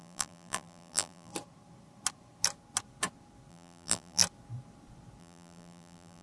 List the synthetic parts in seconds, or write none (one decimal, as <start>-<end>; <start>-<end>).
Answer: 0.0-1.3; 3.5-4.2; 5.2-6.2